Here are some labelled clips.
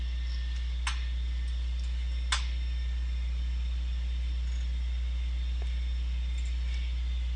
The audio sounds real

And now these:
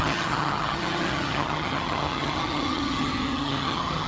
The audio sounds fake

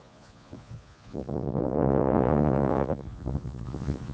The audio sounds fake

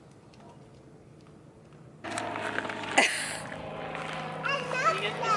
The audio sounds real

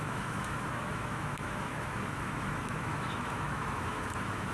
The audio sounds fake